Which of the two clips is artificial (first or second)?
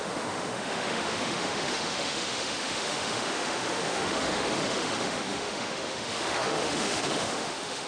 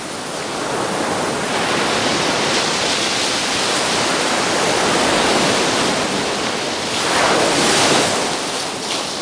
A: first